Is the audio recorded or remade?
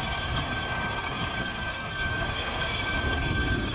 remade